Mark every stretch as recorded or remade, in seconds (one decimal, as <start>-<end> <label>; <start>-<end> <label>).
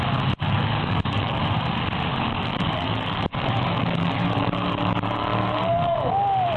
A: 0.0-0.4 recorded; 0.4-1.4 remade; 1.4-2.1 recorded; 2.1-6.1 remade; 6.1-6.6 recorded